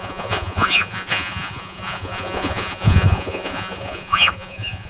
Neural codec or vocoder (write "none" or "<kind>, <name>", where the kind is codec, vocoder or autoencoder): vocoder, Vocos